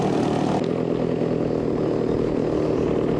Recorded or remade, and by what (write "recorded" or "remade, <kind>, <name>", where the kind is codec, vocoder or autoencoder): recorded